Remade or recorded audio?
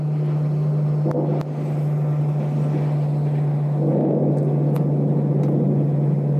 recorded